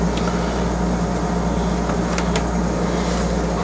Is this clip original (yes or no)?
yes